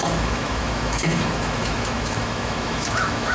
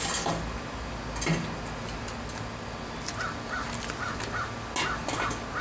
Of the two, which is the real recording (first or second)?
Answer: second